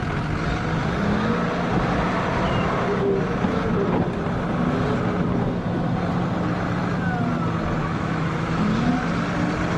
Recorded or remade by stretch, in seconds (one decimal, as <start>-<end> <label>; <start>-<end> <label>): 0.0-7.8 recorded; 7.8-8.9 remade; 8.9-9.8 recorded